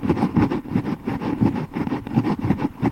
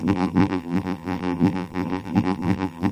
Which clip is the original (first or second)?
first